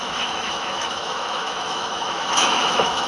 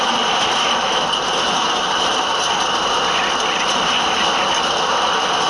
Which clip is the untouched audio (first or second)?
second